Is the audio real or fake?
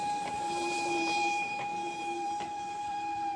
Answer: fake